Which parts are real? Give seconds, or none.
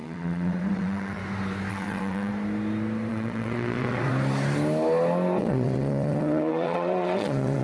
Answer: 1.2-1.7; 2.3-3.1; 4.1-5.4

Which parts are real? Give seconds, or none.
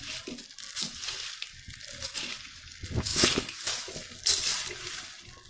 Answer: 0.0-5.5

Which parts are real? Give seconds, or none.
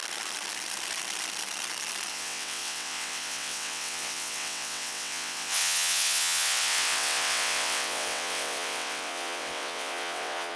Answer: 0.0-2.1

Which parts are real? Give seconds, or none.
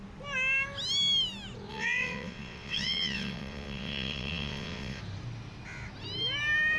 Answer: 0.0-1.7; 5.0-6.8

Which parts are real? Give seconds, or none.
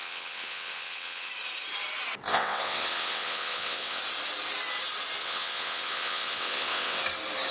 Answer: 1.3-2.3; 4.0-5.2; 7.0-7.5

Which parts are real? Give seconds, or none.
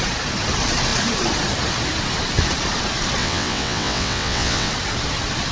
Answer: 0.0-3.2; 4.7-5.5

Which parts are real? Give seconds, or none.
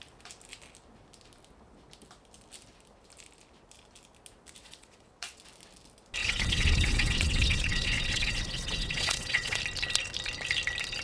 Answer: 0.0-4.6; 5.4-6.2; 9.6-11.0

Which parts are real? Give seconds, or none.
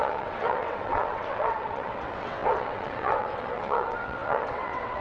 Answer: none